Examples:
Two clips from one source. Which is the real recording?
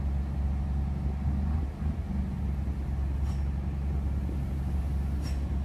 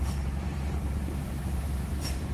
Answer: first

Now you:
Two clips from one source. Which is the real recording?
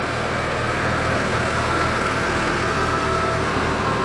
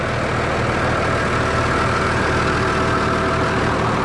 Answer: second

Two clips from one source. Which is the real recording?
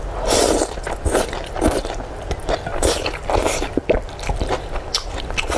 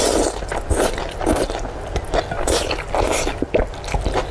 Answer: second